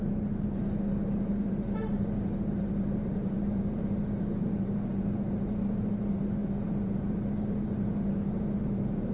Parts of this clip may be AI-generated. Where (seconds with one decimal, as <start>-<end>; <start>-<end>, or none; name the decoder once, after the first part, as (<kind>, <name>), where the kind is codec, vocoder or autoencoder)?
0.0-9.1 (vocoder, BigVGAN v2)